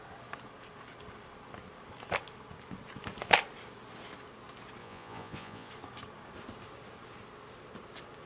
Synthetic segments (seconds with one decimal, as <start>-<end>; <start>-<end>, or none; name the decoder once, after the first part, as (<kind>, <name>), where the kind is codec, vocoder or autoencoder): 4.8-5.7 (vocoder, Vocos)